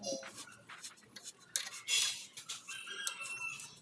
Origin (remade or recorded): recorded